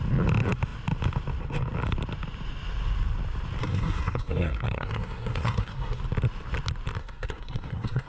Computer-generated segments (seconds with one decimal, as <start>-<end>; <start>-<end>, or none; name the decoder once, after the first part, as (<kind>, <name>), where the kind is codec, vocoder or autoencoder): 3.6-6.0 (codec, SNAC); 7.0-8.1